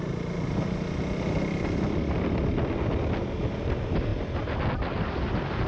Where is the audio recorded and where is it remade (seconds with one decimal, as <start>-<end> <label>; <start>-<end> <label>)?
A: 0.0-5.7 recorded